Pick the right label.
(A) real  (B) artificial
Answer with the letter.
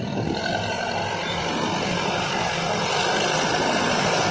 A